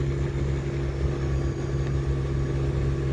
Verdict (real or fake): real